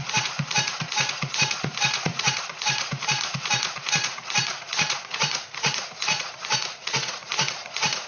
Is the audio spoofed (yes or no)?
yes